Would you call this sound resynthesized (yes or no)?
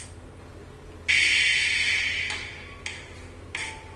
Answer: no